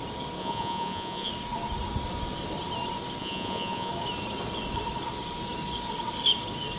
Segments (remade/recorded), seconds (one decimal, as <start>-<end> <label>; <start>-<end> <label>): 0.0-0.4 recorded; 0.4-1.3 remade; 1.3-3.2 recorded; 3.2-3.9 remade; 3.9-6.8 recorded